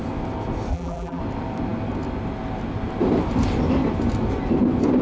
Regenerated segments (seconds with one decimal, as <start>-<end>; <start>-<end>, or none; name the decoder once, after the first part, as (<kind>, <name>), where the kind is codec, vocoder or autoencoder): 0.7-1.2 (vocoder, BigVGAN v2)